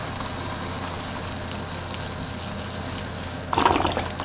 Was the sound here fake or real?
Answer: real